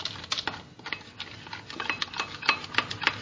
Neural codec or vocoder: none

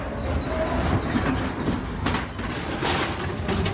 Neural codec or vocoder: none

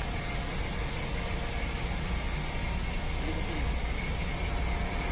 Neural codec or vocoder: none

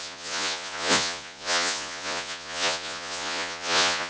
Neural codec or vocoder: vocoder, Vocos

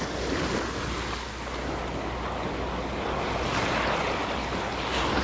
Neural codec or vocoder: none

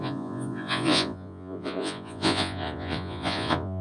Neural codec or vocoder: vocoder, Vocos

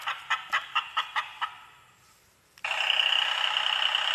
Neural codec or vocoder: none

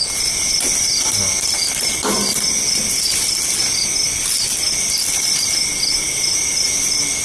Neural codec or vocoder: none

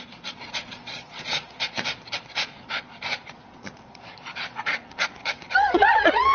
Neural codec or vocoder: vocoder, Vocos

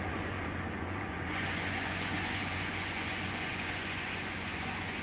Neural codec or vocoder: vocoder, Vocos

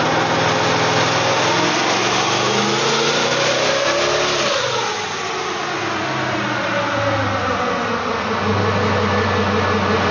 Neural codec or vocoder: none